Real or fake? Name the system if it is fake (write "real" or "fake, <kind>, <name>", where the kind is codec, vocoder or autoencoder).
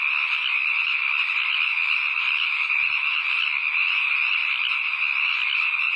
real